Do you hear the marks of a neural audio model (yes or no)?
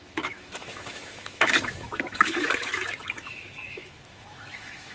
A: yes